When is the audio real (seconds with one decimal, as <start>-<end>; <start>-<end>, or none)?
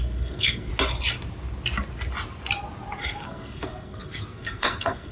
0.7-3.0